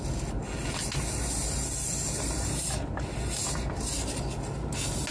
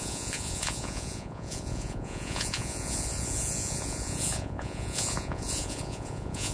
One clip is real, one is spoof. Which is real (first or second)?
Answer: first